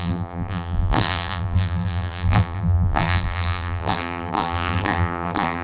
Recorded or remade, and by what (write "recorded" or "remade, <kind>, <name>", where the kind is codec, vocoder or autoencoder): remade, vocoder, BigVGAN v2